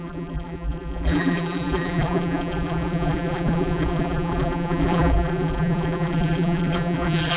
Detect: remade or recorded remade